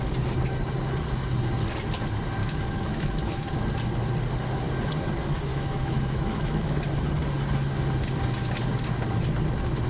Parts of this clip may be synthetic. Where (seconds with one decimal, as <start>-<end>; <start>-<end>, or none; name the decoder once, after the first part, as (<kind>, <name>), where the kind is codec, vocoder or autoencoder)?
2.4-3.5 (autoencoder, DAC-VAE); 5.5-6.8

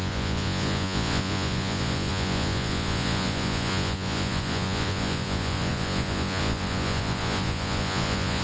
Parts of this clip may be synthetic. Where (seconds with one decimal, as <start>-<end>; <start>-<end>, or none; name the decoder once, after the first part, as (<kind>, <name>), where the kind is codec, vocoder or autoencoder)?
0.0-8.4 (vocoder, Vocos)